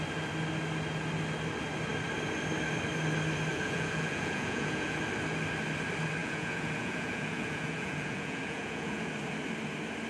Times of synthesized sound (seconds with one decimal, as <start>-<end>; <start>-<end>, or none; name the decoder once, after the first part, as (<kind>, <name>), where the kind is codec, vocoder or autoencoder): 3.5-5.0 (vocoder, Vocos); 6.2-9.1